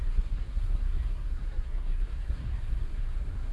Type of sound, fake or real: fake